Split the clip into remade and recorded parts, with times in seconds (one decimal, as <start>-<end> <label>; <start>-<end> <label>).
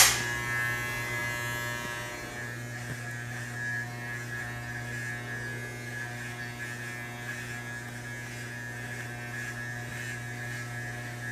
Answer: 0.0-11.3 recorded